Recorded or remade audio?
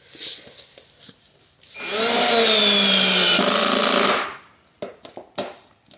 recorded